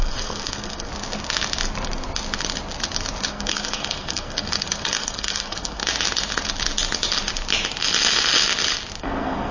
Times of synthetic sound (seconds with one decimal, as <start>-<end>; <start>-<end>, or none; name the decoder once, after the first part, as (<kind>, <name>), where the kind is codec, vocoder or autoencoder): 0.0-0.9 (codec, SNAC); 3.3-5.8; 9.0-9.5